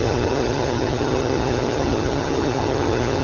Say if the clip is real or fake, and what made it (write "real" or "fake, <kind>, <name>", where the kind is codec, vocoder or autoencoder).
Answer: fake, vocoder, HiFi-GAN